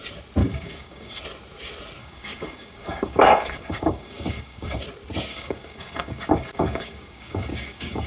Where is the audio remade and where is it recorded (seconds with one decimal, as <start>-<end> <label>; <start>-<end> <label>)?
0.0-0.4 recorded; 0.4-1.2 remade; 1.2-2.0 recorded; 2.0-4.8 remade; 4.8-5.3 recorded; 5.3-8.1 remade